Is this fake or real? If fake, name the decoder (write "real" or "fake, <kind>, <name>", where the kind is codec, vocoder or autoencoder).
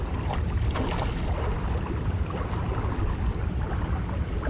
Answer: real